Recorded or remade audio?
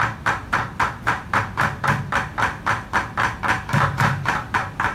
recorded